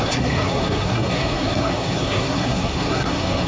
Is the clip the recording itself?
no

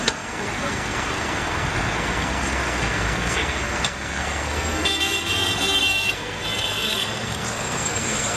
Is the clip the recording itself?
no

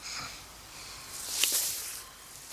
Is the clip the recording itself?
no